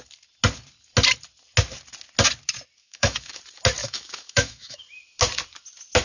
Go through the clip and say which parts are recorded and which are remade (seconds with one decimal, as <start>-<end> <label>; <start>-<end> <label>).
0.0-2.8 recorded; 2.8-3.4 remade; 3.4-3.8 recorded; 3.8-4.8 remade; 4.8-6.0 recorded